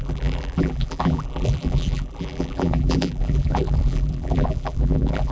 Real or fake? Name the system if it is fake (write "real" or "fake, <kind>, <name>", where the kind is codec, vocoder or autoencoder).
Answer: fake, vocoder, BigVGAN v2